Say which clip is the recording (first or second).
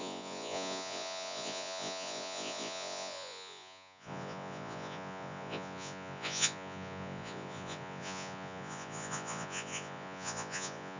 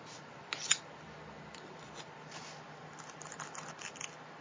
second